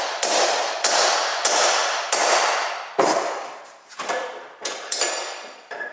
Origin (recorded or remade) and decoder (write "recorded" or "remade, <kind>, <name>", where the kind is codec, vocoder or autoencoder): remade, vocoder, BigVGAN v2